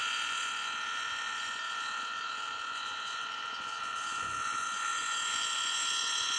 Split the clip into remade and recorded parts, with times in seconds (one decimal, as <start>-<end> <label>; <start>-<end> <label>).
0.0-6.4 remade